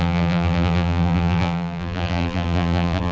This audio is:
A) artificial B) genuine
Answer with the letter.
A